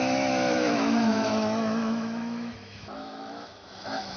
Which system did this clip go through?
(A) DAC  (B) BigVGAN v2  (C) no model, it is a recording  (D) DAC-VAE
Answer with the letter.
D